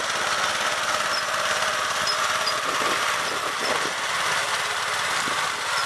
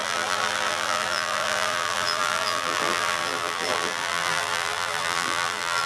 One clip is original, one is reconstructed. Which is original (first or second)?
first